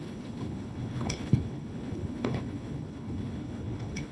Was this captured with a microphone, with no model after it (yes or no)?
no